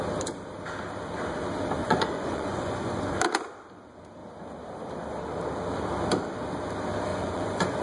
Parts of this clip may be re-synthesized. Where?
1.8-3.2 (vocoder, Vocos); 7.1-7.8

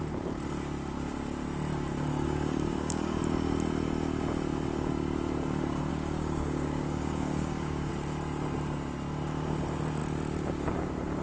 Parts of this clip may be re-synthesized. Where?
2.1-3.2 (codec, DAC); 5.9-7.9

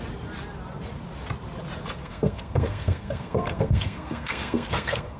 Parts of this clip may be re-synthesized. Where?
2.0-5.2 (codec, SNAC)

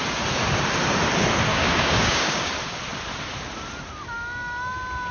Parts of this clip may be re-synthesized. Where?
1.5-2.5 (codec, DAC)

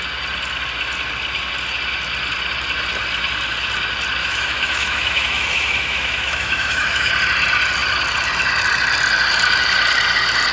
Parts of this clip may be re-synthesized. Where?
4.2-7.1 (autoencoder, DAC-VAE)

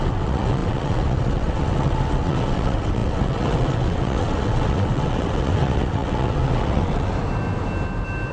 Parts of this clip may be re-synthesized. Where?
0.0-7.1 (vocoder, WaveNeXt)